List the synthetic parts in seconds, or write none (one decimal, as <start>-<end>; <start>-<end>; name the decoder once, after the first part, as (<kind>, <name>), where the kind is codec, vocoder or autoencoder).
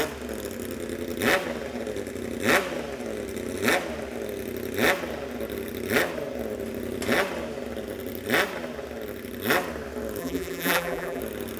10.2-11.2 (vocoder, BigVGAN v2)